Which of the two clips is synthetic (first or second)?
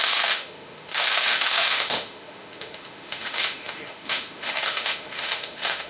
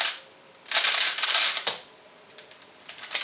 first